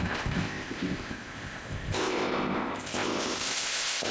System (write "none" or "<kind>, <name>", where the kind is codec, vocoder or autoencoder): codec, ZipCodec